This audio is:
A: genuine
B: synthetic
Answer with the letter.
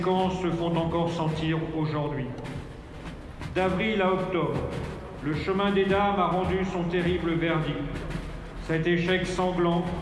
A